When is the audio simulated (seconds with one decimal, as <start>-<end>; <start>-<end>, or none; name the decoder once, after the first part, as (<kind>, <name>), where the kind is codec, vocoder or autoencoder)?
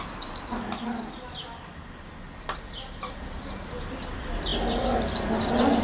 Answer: none